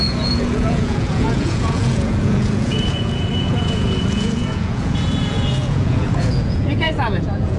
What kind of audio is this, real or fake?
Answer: fake